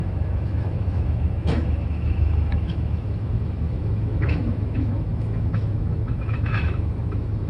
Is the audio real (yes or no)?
no